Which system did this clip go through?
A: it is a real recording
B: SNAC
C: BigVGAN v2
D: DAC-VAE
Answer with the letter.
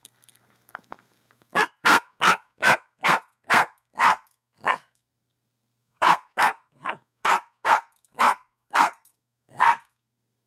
B